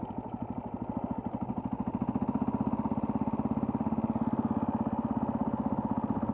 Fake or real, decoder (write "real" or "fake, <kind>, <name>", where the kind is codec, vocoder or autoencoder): real